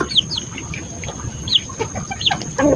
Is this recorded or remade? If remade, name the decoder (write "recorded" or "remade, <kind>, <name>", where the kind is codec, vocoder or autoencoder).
recorded